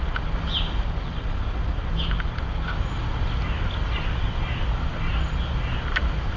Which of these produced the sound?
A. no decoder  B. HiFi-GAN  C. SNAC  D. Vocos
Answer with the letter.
A